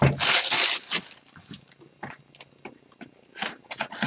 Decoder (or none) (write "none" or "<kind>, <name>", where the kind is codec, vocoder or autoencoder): none